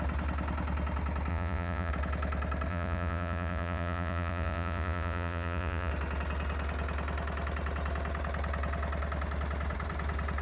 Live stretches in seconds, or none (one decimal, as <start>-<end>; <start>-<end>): 0.0-1.3; 1.9-2.7; 5.9-10.4